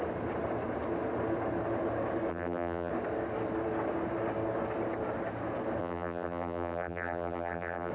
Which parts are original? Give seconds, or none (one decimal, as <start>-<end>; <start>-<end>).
0.0-2.3; 2.9-5.8